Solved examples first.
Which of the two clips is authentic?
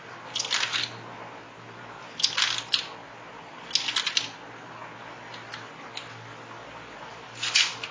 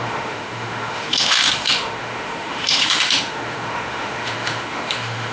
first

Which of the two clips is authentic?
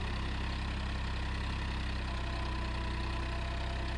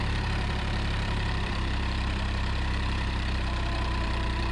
first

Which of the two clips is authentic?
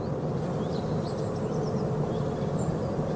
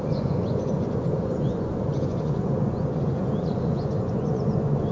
first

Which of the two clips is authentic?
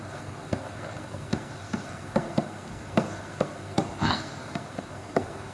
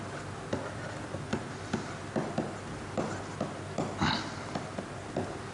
second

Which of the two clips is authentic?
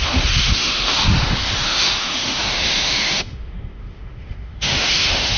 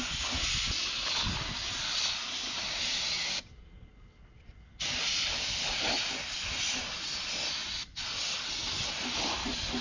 second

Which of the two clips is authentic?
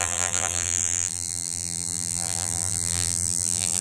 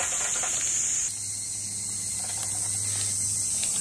second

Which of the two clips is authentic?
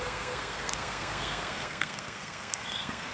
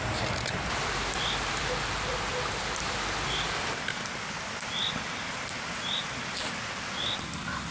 second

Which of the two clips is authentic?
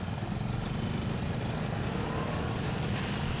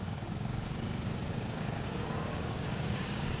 first